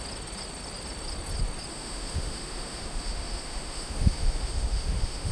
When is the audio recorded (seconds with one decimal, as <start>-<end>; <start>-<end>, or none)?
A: 0.0-1.7